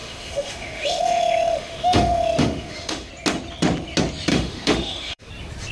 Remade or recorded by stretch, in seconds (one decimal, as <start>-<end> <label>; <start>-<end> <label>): 0.0-3.1 remade; 3.1-4.3 recorded; 4.3-5.3 remade; 5.3-5.7 recorded